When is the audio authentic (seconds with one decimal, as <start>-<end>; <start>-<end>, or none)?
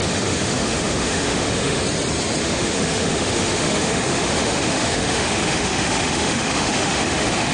1.8-2.4